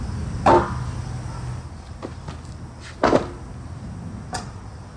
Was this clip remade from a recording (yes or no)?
no